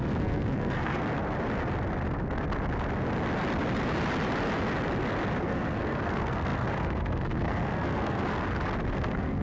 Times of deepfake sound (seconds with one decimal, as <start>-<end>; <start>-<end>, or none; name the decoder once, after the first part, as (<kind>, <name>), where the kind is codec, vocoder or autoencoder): 0.0-1.0 (codec, SNAC); 5.4-8.3; 8.9-9.4